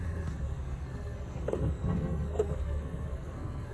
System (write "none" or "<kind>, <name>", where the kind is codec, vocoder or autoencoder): codec, SNAC